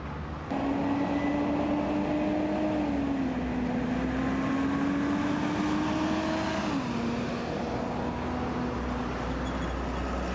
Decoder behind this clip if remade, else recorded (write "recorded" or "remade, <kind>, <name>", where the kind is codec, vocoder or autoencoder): recorded